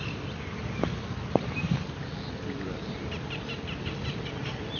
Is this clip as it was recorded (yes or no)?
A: yes